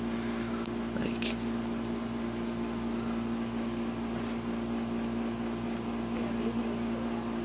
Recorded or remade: recorded